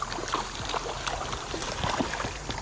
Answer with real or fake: real